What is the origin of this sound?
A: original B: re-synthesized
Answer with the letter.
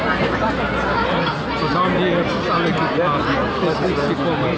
A